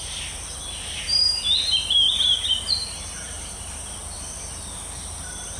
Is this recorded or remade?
remade